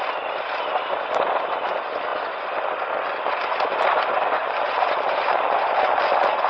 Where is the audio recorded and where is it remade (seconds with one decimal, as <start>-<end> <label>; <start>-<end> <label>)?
0.0-4.4 recorded; 4.4-6.1 remade; 6.1-6.5 recorded

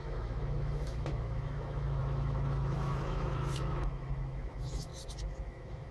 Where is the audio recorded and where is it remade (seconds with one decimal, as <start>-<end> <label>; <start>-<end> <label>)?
0.0-4.9 remade; 4.9-5.4 recorded; 5.4-5.9 remade

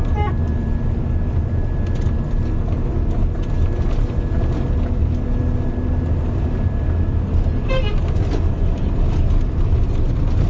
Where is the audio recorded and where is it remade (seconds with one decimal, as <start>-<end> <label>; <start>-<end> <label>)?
0.0-10.5 recorded

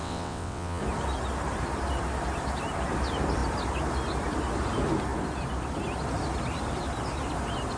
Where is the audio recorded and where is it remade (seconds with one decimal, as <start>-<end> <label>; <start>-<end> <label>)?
0.0-0.8 remade; 0.8-7.8 recorded

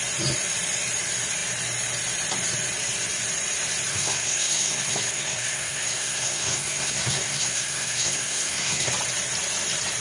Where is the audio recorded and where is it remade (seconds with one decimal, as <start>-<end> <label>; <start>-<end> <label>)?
0.0-3.9 recorded; 3.9-8.9 remade; 8.9-10.0 recorded